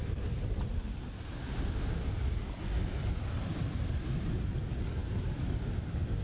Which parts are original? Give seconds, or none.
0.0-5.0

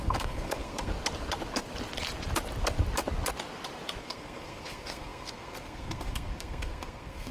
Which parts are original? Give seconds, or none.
0.9-4.0

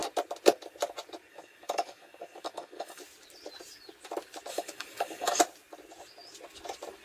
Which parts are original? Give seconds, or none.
0.0-1.3; 3.0-4.5; 5.4-7.0

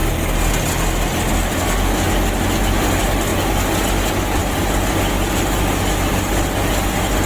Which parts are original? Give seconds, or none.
0.0-7.3

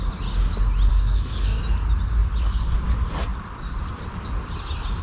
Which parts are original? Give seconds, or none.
0.0-0.9; 1.6-5.0